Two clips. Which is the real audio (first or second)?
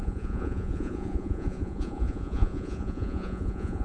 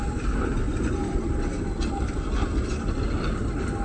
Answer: second